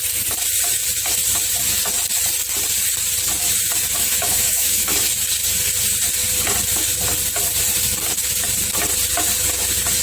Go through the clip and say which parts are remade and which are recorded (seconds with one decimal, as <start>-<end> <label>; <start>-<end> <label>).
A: 0.0-4.1 recorded; 4.1-5.1 remade; 5.1-10.0 recorded